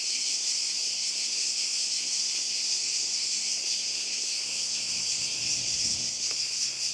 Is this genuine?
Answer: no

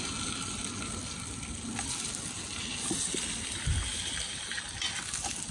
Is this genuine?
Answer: yes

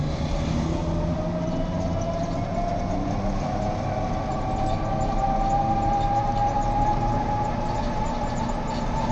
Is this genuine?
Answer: yes